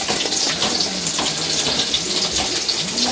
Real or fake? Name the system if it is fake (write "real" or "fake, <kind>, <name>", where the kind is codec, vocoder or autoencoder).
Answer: real